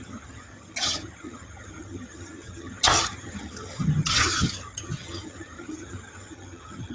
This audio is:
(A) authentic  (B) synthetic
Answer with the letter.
B